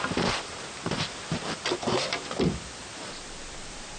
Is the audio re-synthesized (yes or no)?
no